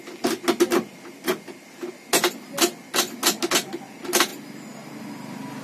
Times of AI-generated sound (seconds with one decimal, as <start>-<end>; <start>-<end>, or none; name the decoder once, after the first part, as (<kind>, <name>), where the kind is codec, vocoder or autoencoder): none